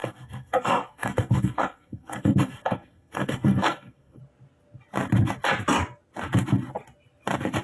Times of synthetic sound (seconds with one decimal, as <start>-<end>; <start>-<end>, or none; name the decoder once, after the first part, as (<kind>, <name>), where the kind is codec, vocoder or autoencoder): 0.0-4.2 (codec, SNAC)